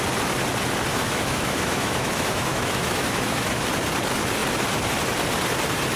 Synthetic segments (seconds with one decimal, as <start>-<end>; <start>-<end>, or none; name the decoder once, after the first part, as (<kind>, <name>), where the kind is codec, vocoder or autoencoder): 0.9-3.6 (autoencoder, DAC-VAE)